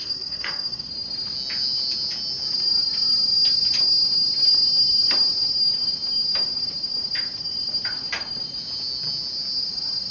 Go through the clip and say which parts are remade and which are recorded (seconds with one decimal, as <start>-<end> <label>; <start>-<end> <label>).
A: 0.0-0.9 remade; 0.9-10.1 recorded

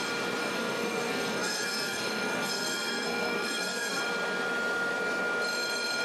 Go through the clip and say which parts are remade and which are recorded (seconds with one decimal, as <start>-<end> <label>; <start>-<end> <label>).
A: 0.0-0.4 recorded; 0.4-4.0 remade; 4.0-6.0 recorded